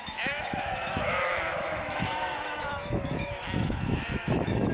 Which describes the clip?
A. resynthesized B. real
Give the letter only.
A